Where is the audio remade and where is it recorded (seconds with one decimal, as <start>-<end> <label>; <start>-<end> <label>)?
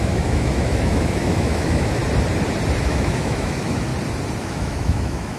0.0-2.0 remade; 2.0-2.8 recorded; 2.8-3.9 remade; 3.9-4.4 recorded; 4.4-5.4 remade